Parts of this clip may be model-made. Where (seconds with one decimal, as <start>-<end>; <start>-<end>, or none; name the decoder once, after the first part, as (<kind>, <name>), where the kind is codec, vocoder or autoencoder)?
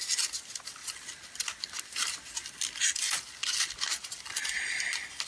none